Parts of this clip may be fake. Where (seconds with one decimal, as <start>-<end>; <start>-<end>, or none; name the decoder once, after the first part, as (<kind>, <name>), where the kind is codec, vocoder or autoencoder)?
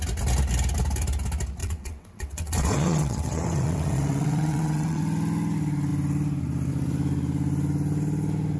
1.6-5.0 (vocoder, WaveNeXt)